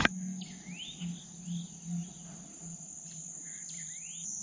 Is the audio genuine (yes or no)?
yes